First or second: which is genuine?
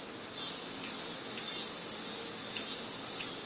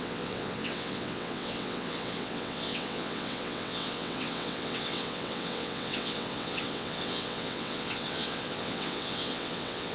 first